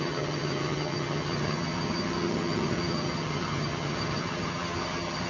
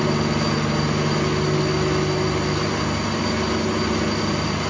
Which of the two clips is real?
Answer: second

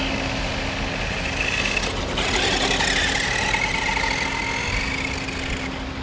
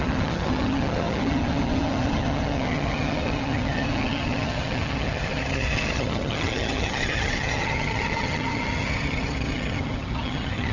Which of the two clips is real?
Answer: first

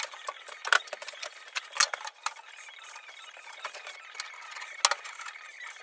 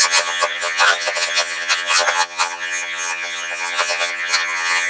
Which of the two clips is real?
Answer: first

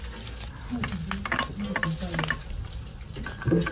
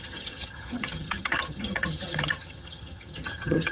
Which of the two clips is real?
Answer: first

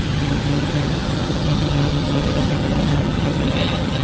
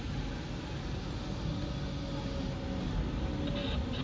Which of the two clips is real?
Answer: second